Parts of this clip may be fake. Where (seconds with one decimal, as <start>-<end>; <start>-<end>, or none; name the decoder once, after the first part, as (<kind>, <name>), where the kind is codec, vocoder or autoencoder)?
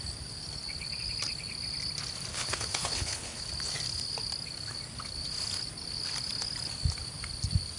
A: 2.3-3.4 (codec, HILCodec)